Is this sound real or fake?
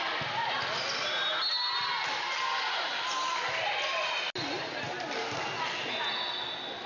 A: real